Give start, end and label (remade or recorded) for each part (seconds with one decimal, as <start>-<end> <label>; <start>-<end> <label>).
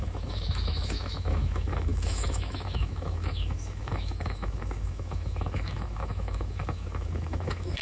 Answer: 0.0-7.8 remade